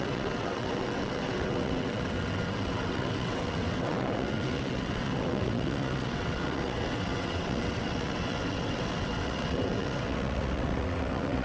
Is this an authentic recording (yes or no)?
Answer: no